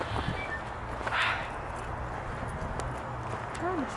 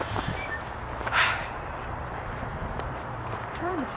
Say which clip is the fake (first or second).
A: second